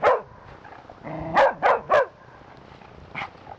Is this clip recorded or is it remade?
recorded